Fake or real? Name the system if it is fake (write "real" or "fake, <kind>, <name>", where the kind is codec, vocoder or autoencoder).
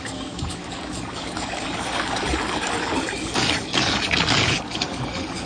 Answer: fake, codec, DAC